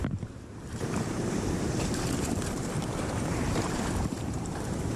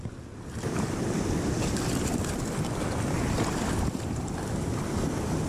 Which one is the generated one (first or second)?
first